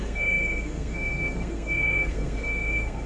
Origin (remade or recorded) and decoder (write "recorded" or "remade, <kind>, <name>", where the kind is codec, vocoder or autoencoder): remade, codec, SNAC